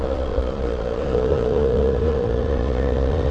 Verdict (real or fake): fake